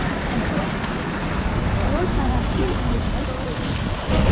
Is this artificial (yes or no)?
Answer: no